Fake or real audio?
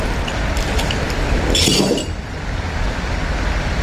real